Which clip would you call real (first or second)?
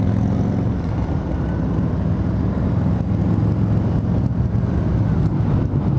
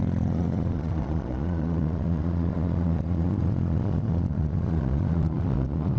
first